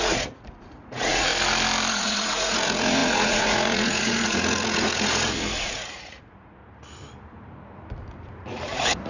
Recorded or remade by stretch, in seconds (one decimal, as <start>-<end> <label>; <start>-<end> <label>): 0.0-1.3 remade; 1.3-1.9 recorded; 1.9-6.6 remade; 6.6-8.3 recorded; 8.3-9.1 remade